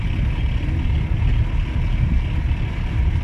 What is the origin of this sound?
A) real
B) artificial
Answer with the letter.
A